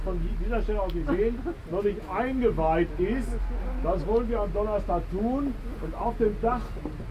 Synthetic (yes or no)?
no